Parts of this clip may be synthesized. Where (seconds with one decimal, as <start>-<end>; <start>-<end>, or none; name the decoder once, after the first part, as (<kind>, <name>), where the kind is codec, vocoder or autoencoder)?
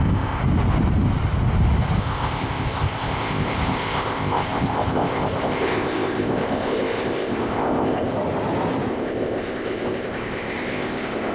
0.0-0.4 (codec, ZipCodec); 2.0-8.1; 8.9-11.3